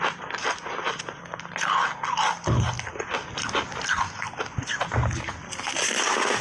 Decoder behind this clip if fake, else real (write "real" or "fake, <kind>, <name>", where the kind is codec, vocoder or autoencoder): real